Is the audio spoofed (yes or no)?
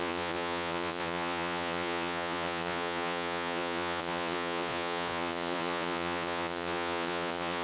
yes